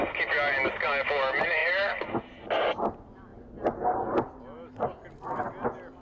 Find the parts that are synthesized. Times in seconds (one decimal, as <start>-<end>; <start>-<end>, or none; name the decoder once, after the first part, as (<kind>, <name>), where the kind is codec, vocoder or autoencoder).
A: none